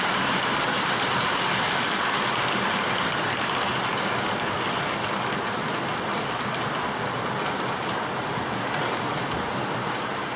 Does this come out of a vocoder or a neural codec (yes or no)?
no